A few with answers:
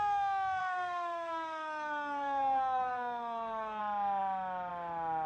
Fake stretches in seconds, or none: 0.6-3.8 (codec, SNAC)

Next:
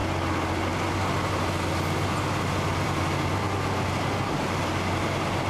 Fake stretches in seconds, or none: none

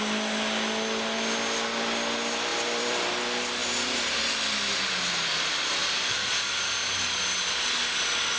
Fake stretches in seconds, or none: 2.5-3.1 (vocoder, BigVGAN v2); 3.6-4.2; 5.8-6.4

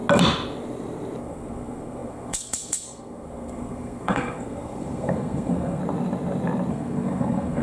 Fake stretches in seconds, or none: 1.2-5.8 (codec, SNAC); 6.7-7.6